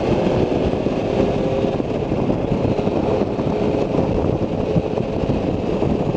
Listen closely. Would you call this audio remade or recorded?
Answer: recorded